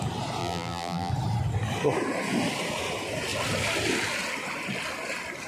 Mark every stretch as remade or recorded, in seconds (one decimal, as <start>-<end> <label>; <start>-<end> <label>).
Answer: 0.0-0.4 recorded; 0.4-1.1 remade; 1.1-5.5 recorded